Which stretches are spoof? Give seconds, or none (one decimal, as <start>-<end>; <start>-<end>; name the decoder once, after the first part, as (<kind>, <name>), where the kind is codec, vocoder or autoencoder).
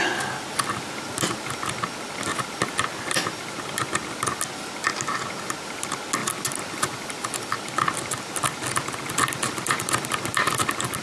none